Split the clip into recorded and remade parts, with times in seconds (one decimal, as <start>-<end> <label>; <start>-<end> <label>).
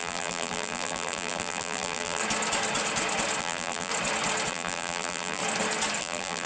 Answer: 0.0-2.2 remade; 2.2-3.4 recorded; 3.4-3.9 remade; 3.9-4.5 recorded; 4.5-5.4 remade; 5.4-6.0 recorded; 6.0-6.5 remade